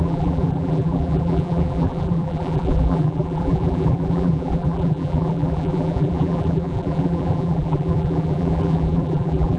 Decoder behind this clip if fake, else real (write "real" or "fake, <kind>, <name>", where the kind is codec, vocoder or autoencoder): fake, vocoder, BigVGAN v2